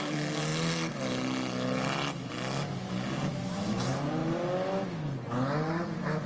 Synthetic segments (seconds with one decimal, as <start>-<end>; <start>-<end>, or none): none